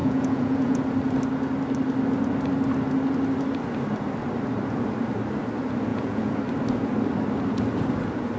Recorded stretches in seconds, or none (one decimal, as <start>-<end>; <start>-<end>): 0.8-5.9; 6.4-8.4